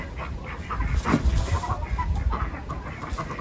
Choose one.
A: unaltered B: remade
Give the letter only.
A